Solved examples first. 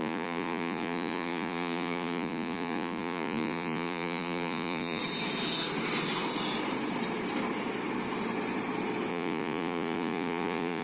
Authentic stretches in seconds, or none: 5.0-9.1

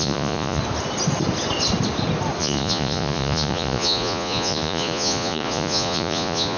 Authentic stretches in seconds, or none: 0.6-2.4

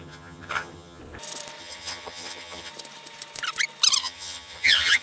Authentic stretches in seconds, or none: 1.0-1.6; 2.7-4.0

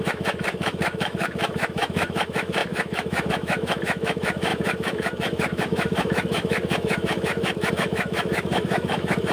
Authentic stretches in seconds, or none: none

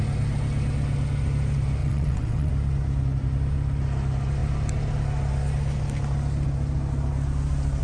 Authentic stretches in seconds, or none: 0.0-1.8; 2.5-7.8

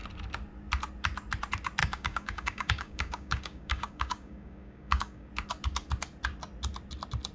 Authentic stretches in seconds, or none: 0.0-1.8; 5.3-7.3